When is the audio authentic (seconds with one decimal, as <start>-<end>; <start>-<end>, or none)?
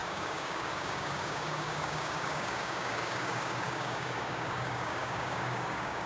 none